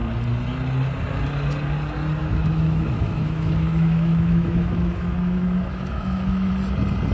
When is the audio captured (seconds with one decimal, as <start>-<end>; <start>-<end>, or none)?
0.0-2.2; 6.5-7.1